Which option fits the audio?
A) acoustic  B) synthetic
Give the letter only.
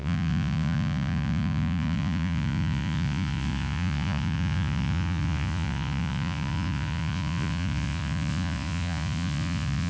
B